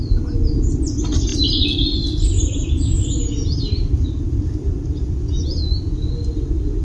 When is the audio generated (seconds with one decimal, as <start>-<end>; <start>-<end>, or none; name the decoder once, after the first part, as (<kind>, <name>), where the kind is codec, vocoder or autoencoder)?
1.3-5.4 (vocoder, BigVGAN v2)